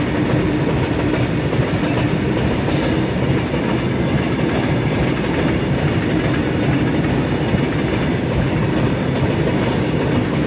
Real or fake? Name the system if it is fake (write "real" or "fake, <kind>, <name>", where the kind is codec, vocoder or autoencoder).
real